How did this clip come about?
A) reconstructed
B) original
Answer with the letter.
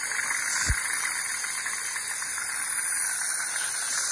B